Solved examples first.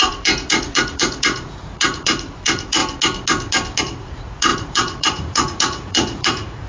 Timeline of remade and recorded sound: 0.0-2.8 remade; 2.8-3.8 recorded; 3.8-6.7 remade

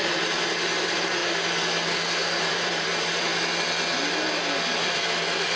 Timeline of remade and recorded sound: 0.0-1.2 remade; 1.2-2.5 recorded; 2.5-3.3 remade; 3.3-5.6 recorded

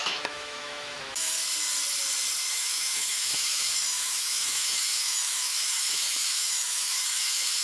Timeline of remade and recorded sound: 0.0-1.4 remade; 1.4-2.5 recorded; 2.5-7.6 remade

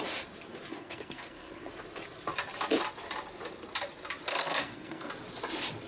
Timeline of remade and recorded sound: 0.0-0.7 recorded; 0.7-1.7 remade; 1.7-4.3 recorded; 4.3-5.1 remade; 5.1-5.9 recorded

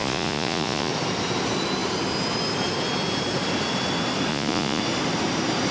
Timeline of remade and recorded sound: 0.0-0.9 remade; 0.9-4.3 recorded; 4.3-4.8 remade; 4.8-5.7 recorded

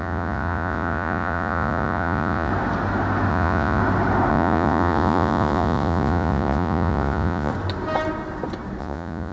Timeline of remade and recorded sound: 0.0-2.5 remade; 2.5-3.3 recorded; 3.3-3.8 remade; 3.8-4.3 recorded; 4.3-7.5 remade; 7.5-8.8 recorded; 8.8-9.3 remade